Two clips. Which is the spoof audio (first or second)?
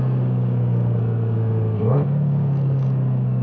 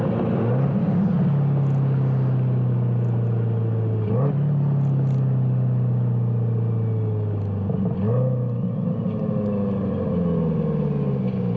first